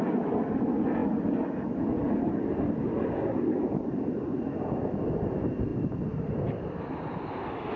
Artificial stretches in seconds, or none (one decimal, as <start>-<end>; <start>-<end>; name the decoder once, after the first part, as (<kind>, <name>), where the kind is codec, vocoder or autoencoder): none

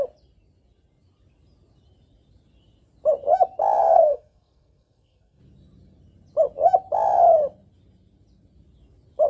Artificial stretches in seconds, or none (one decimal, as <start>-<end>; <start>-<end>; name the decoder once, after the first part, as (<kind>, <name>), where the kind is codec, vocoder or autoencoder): 3.8-5.4 (codec, SNAC)

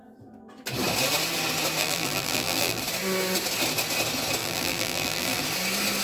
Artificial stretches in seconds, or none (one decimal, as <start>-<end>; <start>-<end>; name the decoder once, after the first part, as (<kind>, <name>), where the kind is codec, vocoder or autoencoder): 1.8-2.8 (vocoder, BigVGAN v2); 4.4-5.4

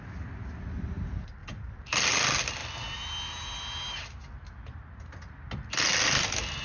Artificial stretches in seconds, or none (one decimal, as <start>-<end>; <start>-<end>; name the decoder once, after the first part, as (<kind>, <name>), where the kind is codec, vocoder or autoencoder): none

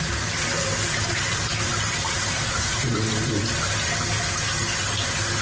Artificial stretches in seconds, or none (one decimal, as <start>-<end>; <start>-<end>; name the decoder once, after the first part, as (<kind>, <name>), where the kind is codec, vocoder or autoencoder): 1.0-4.2 (vocoder, BigVGAN v2)

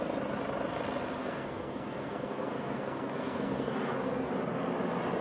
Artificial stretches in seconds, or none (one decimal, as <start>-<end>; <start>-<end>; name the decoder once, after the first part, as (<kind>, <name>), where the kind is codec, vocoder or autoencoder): 1.2-4.3 (codec, SNAC)